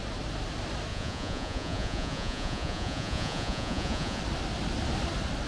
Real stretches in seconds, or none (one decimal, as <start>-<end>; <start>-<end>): 0.0-0.9; 4.2-5.5